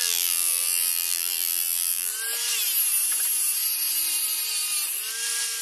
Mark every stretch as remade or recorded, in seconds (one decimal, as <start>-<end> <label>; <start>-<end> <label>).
0.0-2.1 remade; 2.1-5.6 recorded